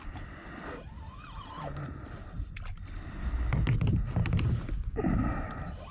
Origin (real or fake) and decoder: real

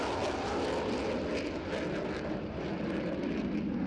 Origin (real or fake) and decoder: real